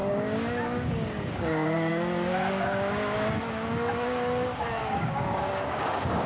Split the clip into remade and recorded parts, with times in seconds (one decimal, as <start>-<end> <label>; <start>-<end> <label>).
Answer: 0.0-6.3 remade